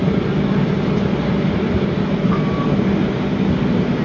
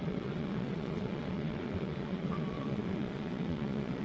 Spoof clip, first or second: second